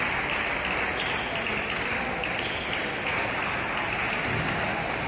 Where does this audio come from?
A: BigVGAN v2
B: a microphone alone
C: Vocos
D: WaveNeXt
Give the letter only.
B